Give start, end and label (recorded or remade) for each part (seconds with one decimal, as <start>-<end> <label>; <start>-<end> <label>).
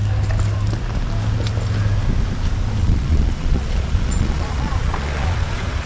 0.0-2.8 recorded; 2.8-5.9 remade